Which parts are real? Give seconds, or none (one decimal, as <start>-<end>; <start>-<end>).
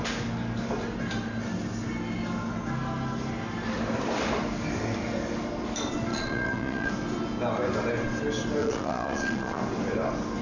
0.0-6.1; 6.9-8.6; 9.6-10.4